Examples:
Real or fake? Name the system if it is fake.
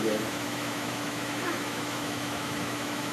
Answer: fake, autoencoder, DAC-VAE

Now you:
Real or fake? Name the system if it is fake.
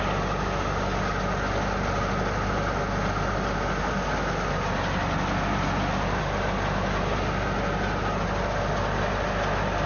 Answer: real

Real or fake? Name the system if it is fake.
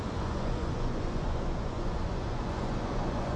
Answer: fake, vocoder, Vocos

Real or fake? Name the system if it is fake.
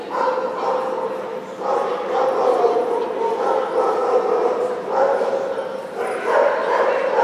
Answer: real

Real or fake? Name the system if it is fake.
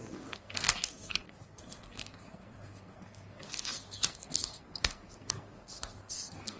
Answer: fake, codec, SNAC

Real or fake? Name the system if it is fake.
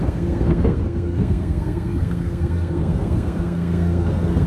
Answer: fake, codec, SNAC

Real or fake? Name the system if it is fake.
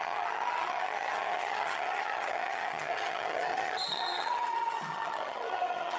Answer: fake, vocoder, HiFi-GAN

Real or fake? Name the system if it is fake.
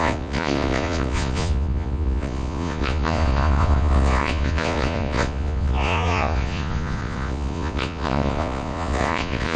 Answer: fake, vocoder, Vocos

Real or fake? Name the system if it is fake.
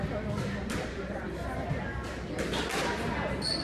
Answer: real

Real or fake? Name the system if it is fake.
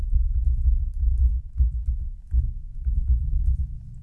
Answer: real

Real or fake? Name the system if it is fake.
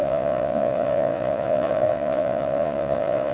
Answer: fake, vocoder, Vocos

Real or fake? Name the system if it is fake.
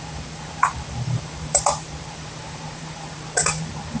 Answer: fake, vocoder, BigVGAN v2